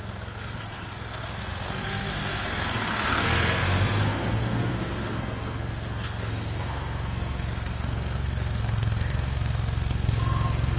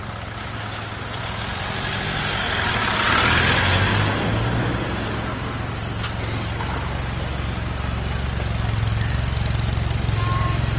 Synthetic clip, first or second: first